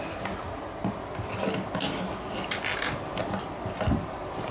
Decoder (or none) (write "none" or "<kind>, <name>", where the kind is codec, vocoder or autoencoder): none